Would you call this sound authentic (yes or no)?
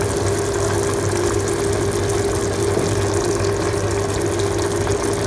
yes